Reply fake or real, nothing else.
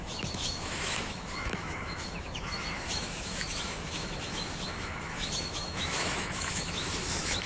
fake